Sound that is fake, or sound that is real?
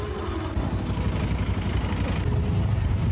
real